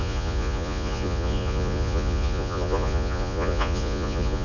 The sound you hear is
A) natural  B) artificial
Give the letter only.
B